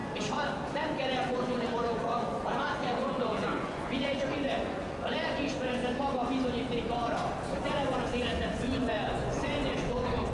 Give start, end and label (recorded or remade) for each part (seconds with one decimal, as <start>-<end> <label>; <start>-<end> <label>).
0.0-1.1 recorded; 1.1-5.8 remade; 5.8-7.6 recorded; 7.6-10.3 remade